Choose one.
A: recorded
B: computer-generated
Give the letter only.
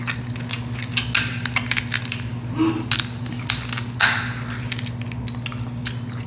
A